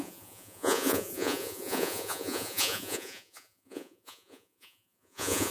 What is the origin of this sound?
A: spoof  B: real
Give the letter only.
A